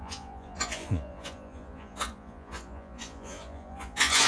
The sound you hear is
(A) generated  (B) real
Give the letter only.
A